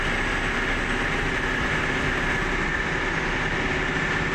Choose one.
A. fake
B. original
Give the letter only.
B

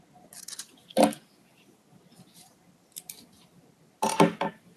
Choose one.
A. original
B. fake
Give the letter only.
A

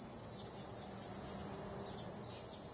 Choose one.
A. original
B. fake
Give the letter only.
A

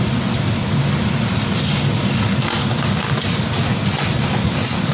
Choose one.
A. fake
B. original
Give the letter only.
B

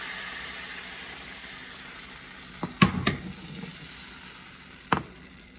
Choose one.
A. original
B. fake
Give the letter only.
A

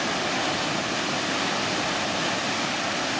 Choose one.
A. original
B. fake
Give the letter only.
A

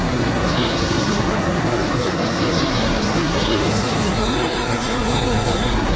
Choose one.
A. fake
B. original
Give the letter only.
A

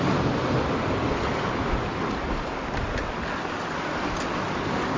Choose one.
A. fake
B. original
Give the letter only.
B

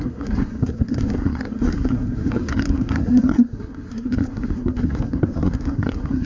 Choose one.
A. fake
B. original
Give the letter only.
A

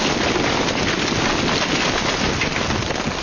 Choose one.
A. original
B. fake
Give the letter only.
A